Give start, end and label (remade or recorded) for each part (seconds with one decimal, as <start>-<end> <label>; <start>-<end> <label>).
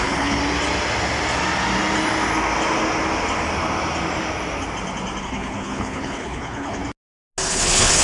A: 0.0-0.4 remade; 0.4-5.2 recorded; 5.2-6.8 remade; 6.8-7.5 recorded; 7.5-8.0 remade